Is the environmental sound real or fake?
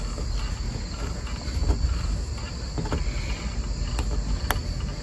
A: real